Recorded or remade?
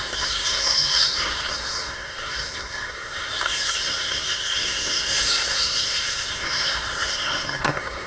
remade